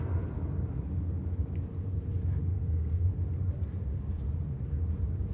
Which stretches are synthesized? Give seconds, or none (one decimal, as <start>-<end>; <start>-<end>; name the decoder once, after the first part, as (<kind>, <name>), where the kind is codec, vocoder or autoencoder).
2.5-3.1 (codec, SNAC)

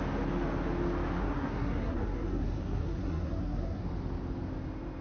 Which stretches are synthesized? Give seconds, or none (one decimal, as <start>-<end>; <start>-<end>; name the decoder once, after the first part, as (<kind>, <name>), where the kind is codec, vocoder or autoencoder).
1.2-3.8 (codec, SNAC)

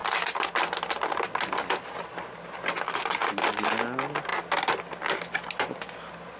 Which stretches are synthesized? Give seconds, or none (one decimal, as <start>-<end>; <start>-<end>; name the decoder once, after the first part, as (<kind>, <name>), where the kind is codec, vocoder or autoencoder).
none

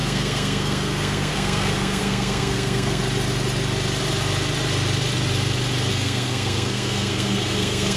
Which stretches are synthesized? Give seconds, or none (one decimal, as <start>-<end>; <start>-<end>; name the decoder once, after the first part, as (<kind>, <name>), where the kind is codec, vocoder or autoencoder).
0.0-3.0 (codec, SNAC); 5.9-8.0

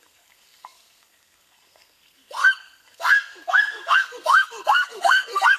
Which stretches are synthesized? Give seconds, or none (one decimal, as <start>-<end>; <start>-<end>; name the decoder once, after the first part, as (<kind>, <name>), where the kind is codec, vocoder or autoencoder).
0.0-5.6 (codec, SNAC)